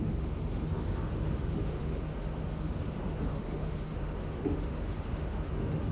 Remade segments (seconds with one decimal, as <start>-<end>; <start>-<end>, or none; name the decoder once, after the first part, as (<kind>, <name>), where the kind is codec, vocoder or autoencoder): 0.0-5.9 (autoencoder, DAC-VAE)